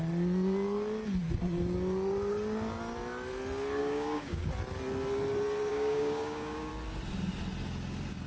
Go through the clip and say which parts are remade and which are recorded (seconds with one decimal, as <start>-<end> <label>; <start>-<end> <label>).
0.0-3.8 recorded; 3.8-4.5 remade; 4.5-5.7 recorded; 5.7-6.7 remade; 6.7-8.3 recorded